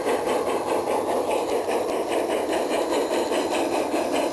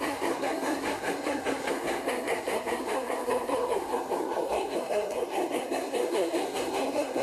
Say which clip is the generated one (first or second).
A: second